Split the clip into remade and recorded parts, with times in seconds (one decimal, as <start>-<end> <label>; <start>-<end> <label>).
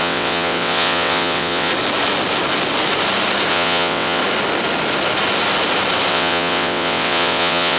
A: 0.0-1.7 remade; 1.7-3.5 recorded; 3.5-4.2 remade; 4.2-6.1 recorded; 6.1-7.8 remade